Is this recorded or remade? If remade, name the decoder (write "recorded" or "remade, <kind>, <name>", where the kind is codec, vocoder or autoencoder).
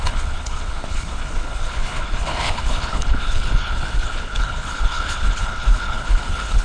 remade, codec, HILCodec